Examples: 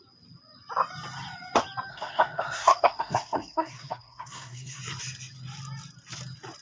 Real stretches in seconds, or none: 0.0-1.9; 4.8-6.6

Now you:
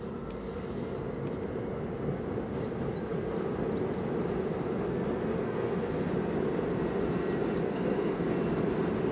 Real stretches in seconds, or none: 0.0-5.4; 6.1-7.6; 8.2-9.1